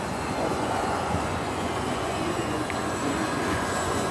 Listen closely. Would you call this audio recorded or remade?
remade